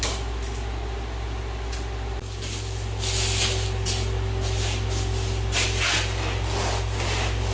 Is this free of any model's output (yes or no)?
yes